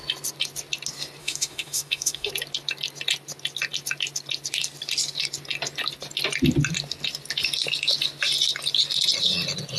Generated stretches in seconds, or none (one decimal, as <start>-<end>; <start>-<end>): 1.2-2.3

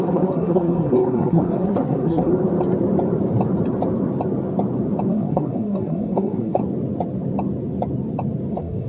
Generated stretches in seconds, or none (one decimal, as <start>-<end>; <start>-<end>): 0.0-2.3; 5.1-6.6; 8.5-8.9

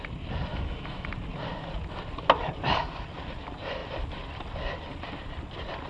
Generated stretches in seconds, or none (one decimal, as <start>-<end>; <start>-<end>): 0.5-1.1

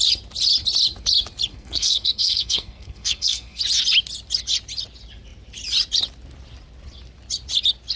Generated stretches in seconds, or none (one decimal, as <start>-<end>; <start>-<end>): 1.5-3.6

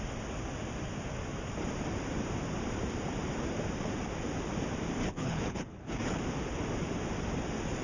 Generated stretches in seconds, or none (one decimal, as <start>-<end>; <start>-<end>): 5.0-6.2